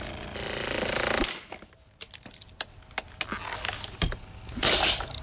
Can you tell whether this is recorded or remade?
recorded